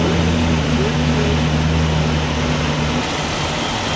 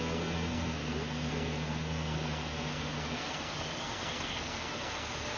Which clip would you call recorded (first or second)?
first